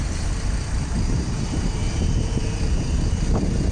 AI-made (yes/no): yes